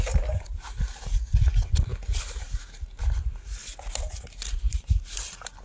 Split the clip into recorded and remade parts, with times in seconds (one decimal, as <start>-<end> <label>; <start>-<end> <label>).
0.0-5.6 recorded